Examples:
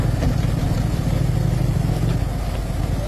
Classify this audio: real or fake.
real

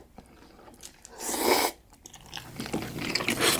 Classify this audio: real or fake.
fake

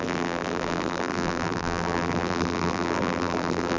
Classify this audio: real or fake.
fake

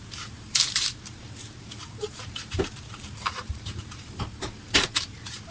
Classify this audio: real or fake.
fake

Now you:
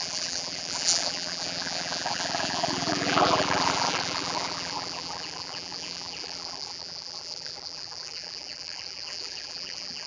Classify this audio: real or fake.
fake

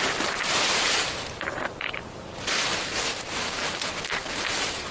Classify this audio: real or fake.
fake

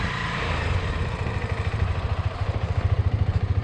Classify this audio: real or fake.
fake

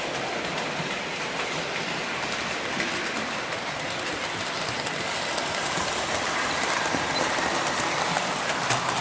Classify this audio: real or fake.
real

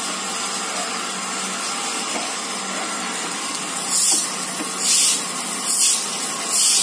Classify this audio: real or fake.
real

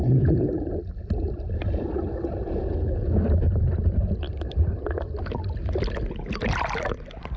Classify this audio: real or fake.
fake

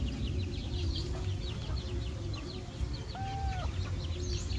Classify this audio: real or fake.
real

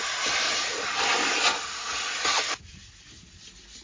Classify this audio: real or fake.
real